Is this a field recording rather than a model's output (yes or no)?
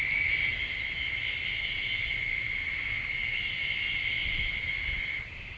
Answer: yes